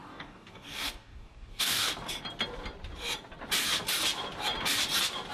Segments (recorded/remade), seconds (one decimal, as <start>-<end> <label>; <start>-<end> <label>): 0.0-1.9 remade; 1.9-5.3 recorded